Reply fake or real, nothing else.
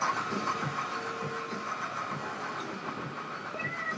real